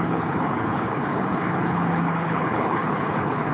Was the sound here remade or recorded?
remade